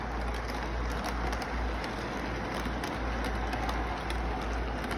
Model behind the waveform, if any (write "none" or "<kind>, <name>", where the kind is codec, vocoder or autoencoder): none